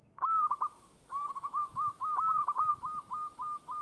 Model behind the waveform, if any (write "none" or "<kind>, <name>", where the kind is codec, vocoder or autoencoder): autoencoder, DAC-VAE